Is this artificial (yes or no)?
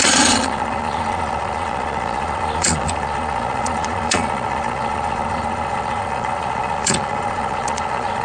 yes